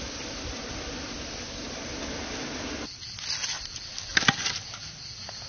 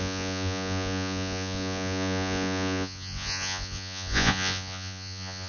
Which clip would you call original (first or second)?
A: first